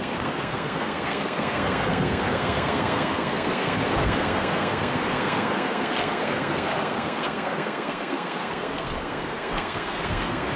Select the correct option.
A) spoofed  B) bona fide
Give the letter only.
A